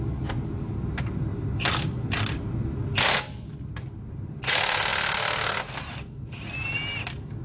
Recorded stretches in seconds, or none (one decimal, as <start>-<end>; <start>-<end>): 0.0-7.4